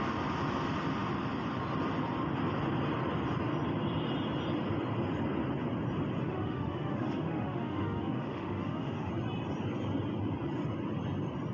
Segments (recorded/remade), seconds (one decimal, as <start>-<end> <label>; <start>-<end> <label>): 0.0-6.2 recorded; 6.2-9.1 remade; 9.1-11.5 recorded